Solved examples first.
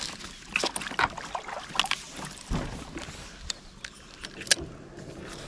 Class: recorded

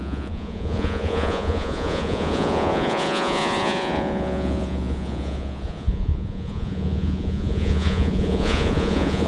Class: remade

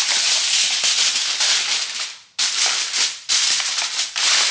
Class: recorded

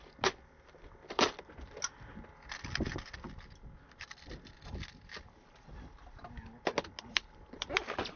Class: recorded